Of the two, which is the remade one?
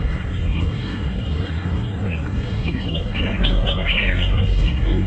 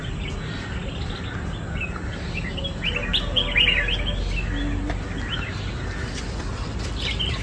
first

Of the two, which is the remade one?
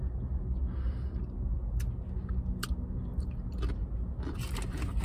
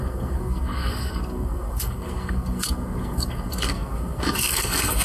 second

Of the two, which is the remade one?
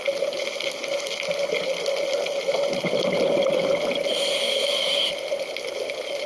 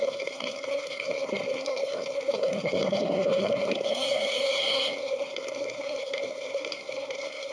second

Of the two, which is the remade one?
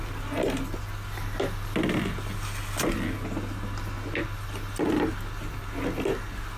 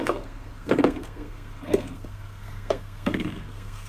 second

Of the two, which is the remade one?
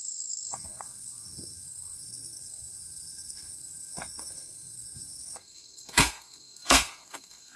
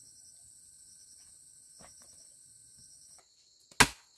first